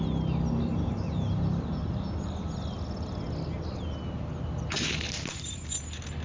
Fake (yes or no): no